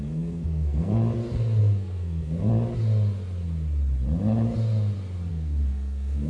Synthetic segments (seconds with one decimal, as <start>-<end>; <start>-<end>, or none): 0.0-1.0; 1.6-2.5; 5.3-6.3